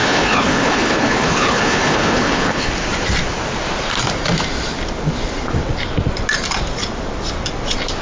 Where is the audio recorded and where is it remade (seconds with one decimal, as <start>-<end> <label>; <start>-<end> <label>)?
0.0-2.7 remade; 2.7-8.0 recorded